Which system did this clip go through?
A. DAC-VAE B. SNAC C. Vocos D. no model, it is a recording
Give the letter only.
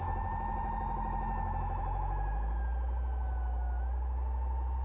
D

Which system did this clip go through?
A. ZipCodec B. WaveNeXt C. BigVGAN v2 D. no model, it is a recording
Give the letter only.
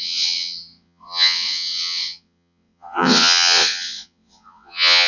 B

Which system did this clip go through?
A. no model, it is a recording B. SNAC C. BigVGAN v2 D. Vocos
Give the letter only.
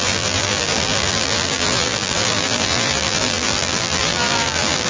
C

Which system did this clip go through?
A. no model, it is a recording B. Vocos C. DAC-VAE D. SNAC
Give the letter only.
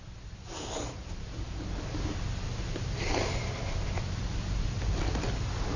A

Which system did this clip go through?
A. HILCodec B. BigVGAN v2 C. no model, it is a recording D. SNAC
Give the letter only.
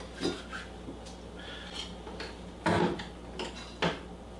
C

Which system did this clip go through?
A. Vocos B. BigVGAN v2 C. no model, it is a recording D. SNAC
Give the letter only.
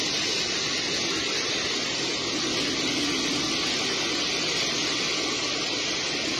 C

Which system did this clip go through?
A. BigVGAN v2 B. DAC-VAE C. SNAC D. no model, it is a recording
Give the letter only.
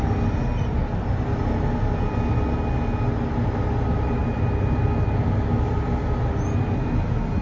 D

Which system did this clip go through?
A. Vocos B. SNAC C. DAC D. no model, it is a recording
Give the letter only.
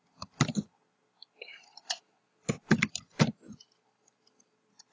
D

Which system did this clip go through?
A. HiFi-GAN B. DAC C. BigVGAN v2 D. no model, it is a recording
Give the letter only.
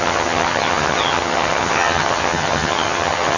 A